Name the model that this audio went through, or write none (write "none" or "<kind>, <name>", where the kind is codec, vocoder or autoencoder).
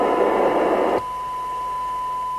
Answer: none